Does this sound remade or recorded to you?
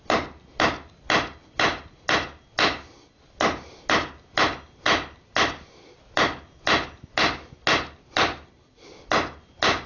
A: recorded